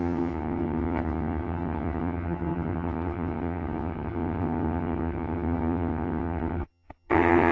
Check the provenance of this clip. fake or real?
fake